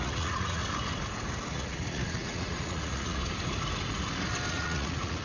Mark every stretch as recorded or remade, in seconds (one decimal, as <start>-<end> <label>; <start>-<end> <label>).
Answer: 0.0-0.6 remade; 0.6-1.5 recorded; 1.5-3.2 remade; 3.2-4.5 recorded; 4.5-5.2 remade